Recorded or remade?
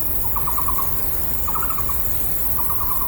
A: recorded